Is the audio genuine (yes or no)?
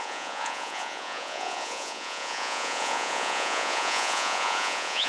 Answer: no